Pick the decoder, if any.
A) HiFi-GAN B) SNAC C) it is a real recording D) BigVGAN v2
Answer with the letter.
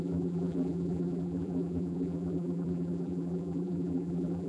D